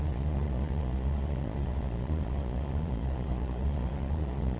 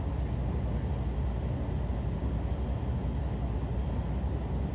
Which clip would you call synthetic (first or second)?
first